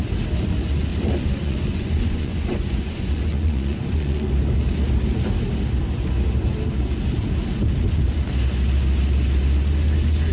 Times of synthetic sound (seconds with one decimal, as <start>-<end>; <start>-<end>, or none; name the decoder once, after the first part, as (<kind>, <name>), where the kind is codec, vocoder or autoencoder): 0.9-4.3 (vocoder, Vocos)